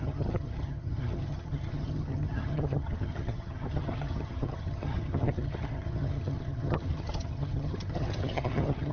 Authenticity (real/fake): fake